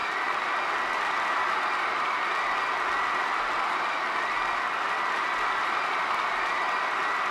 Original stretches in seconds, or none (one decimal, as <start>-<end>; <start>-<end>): 0.0-7.3